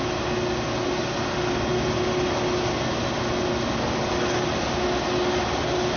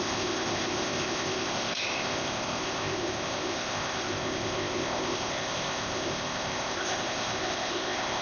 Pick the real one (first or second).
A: first